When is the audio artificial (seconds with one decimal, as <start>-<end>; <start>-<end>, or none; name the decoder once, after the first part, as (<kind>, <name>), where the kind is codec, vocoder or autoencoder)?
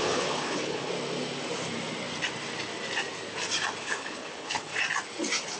0.0-0.9 (codec, HILCodec); 3.8-4.7